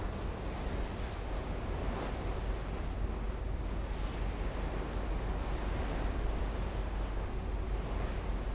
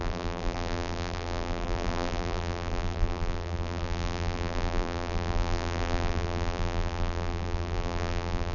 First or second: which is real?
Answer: first